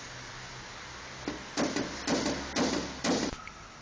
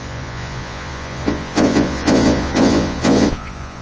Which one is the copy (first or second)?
second